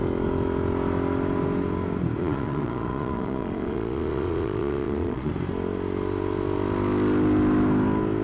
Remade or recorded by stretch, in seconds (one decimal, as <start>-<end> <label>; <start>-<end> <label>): 0.0-2.2 recorded; 2.2-5.3 remade; 5.3-8.2 recorded